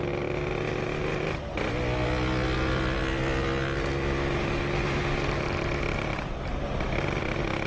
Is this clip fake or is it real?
real